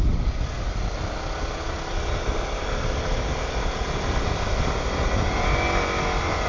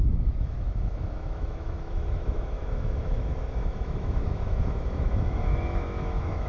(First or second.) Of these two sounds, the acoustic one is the first